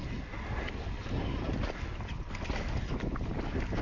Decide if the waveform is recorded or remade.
recorded